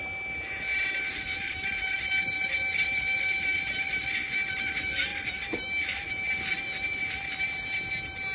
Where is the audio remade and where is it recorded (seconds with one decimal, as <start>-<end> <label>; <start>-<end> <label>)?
0.0-5.1 recorded; 5.1-6.3 remade; 6.3-8.3 recorded